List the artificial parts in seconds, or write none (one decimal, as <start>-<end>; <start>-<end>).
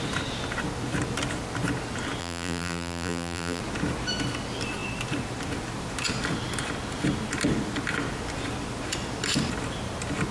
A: 2.2-3.6